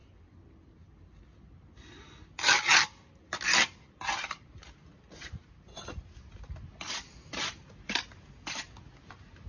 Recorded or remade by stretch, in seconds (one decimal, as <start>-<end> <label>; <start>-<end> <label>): 0.0-9.5 recorded